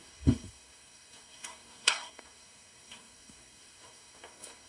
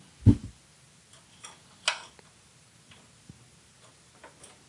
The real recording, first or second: second